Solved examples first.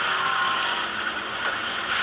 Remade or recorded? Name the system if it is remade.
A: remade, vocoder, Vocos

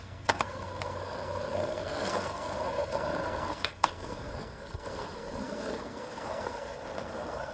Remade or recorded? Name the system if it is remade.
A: remade, codec, SNAC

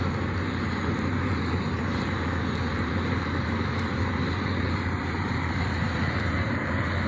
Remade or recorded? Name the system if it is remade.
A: remade, vocoder, BigVGAN v2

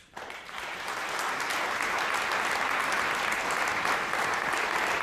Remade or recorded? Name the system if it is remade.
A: recorded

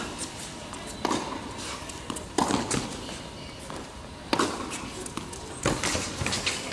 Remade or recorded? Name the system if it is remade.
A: recorded